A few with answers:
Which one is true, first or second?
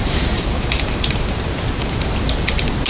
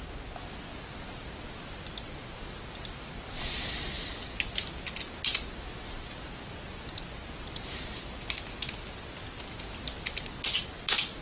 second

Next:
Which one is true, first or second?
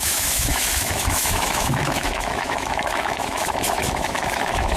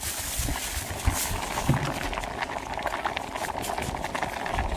second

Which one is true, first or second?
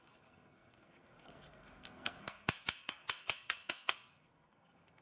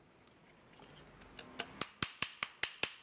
second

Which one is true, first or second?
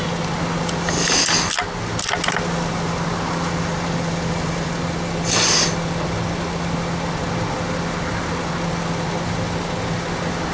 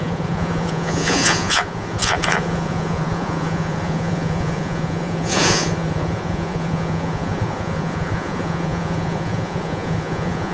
first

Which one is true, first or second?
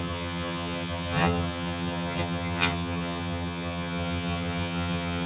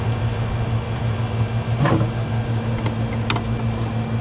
second